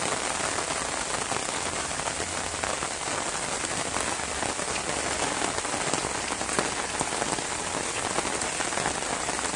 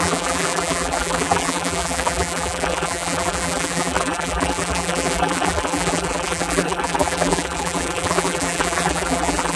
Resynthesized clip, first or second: second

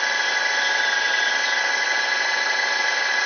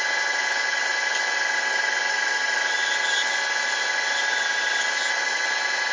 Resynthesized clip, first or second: first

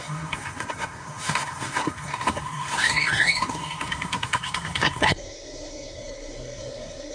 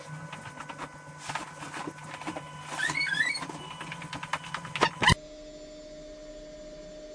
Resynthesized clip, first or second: first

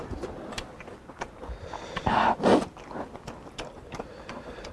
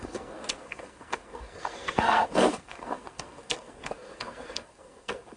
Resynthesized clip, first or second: second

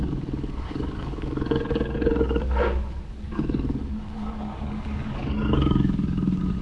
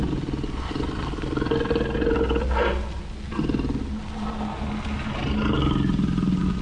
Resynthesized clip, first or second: first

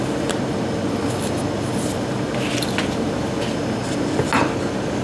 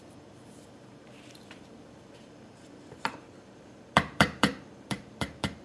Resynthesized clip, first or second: second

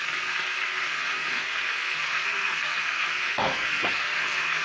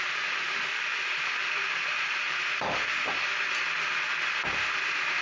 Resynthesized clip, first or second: first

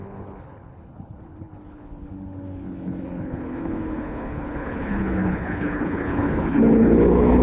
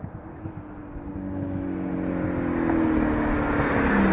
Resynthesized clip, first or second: first